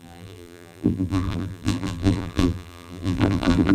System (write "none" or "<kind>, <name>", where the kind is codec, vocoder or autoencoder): vocoder, BigVGAN v2